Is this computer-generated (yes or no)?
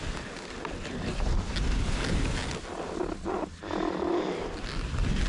no